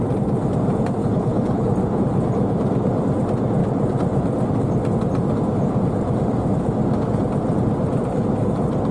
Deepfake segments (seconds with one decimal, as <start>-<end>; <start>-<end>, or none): 1.0-1.7